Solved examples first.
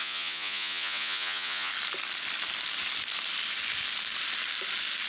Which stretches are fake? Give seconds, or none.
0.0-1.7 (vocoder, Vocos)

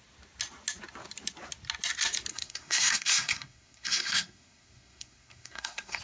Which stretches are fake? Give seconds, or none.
2.3-6.0 (codec, SNAC)

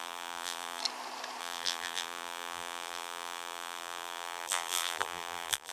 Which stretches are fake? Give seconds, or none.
0.0-0.8 (vocoder, BigVGAN v2); 1.4-5.7

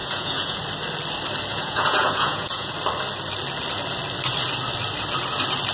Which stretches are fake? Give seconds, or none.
0.0-0.6 (vocoder, Vocos); 1.5-2.7

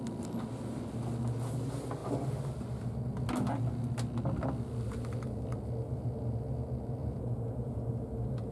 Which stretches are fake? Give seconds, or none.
7.0-7.9 (vocoder, Vocos)

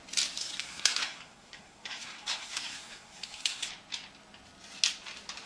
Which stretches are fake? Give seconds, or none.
0.4-3.7 (codec, SNAC)

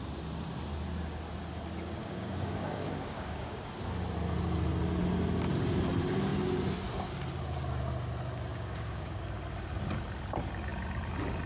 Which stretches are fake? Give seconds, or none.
2.0-3.7 (codec, DAC); 8.5-9.2

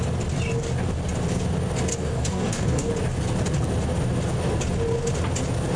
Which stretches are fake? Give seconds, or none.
1.9-2.9 (codec, DAC)